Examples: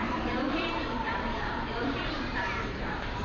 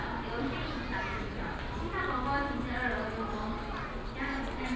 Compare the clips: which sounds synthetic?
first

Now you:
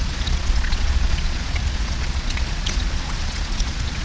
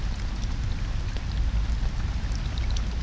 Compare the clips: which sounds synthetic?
first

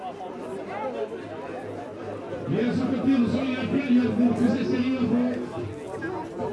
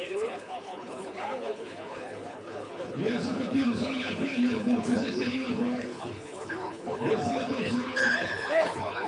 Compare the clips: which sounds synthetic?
second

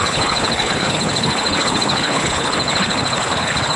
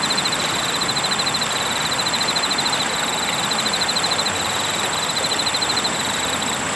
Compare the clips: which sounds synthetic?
first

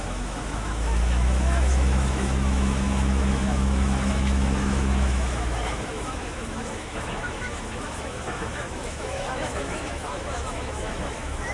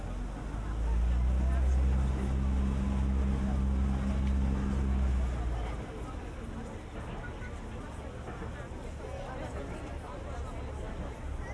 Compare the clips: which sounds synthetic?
first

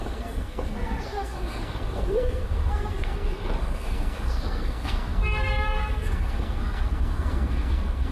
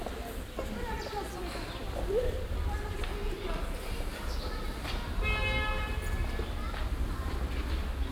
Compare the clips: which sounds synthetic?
first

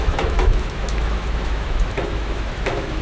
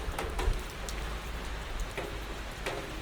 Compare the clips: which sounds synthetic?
first